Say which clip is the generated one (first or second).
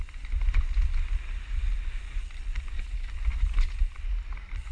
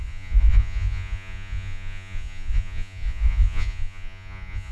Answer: second